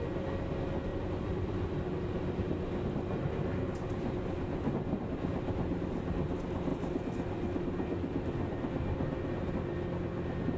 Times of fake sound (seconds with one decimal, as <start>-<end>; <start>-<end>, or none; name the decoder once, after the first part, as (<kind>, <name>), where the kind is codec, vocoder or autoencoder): 0.9-1.7 (vocoder, BigVGAN v2); 6.7-9.5